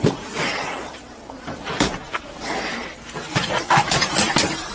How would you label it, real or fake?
fake